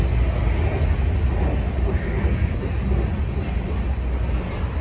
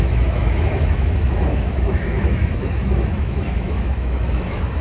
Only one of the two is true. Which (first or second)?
first